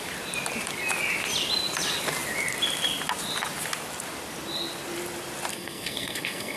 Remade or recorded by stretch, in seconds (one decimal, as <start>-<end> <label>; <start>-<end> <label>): 0.0-5.5 recorded; 5.5-6.6 remade